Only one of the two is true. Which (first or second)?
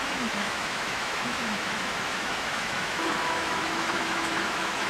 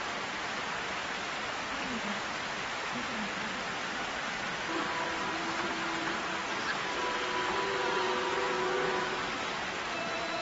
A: second